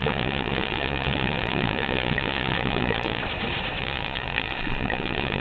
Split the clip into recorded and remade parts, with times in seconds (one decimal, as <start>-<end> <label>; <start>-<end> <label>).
0.0-3.2 remade; 3.2-3.8 recorded; 3.8-5.4 remade